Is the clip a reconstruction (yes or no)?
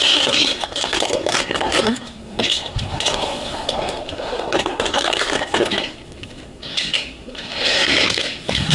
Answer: yes